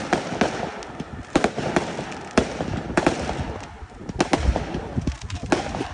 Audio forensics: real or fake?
real